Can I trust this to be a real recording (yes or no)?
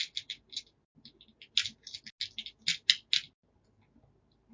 yes